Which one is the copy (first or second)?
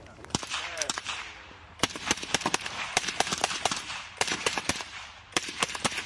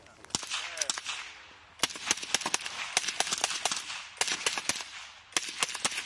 first